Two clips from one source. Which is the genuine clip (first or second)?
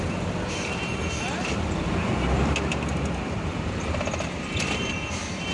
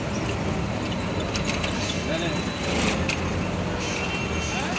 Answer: second